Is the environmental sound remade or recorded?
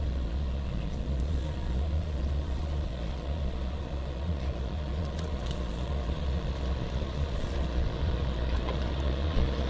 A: remade